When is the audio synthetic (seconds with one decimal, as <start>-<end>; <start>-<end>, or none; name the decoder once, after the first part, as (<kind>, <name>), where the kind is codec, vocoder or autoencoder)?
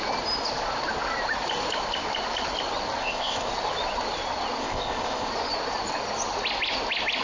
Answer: 3.0-3.5 (codec, ZipCodec); 4.6-5.3